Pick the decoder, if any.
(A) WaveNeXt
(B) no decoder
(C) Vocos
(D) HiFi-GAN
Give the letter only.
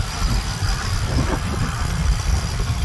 B